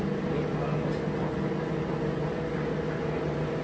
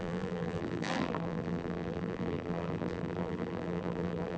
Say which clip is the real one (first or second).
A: first